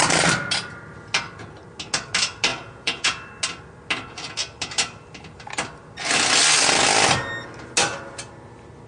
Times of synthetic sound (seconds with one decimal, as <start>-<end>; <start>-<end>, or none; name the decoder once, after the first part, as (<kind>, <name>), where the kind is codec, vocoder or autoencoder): 2.5-3.1 (vocoder, Vocos)